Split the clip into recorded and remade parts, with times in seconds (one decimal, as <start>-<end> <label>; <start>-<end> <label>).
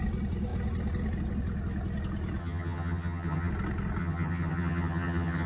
0.0-2.4 recorded; 2.4-3.5 remade; 3.5-4.0 recorded; 4.0-5.5 remade